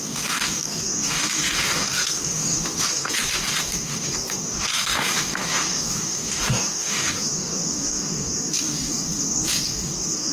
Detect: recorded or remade remade